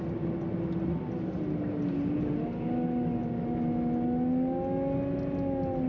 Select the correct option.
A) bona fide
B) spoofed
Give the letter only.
A